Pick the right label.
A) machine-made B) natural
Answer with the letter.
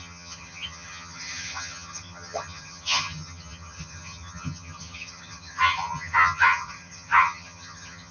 A